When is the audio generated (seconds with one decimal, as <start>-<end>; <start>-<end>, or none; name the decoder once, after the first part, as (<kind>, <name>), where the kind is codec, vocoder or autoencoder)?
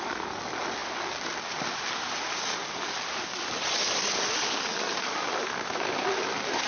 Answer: none